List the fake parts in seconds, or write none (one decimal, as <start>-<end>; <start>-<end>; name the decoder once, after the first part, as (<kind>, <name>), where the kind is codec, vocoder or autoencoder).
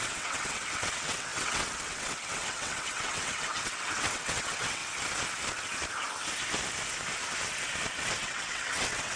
0.0-4.8 (vocoder, WaveNeXt); 8.2-9.2